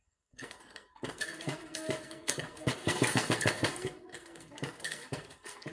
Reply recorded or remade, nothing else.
remade